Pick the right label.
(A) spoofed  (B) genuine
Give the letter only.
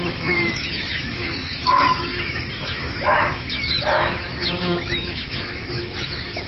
A